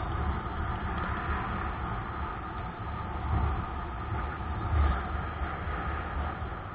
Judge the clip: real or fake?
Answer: real